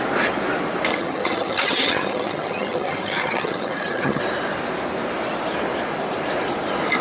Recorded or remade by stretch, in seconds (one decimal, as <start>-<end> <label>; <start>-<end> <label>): 0.0-0.9 recorded; 0.9-4.2 remade; 4.2-7.0 recorded